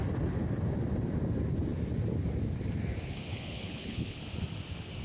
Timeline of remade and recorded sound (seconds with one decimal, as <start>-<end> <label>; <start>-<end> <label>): 0.0-3.3 recorded; 3.3-4.2 remade; 4.2-5.0 recorded